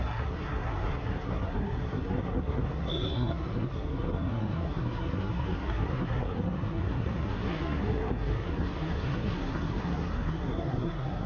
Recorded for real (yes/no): no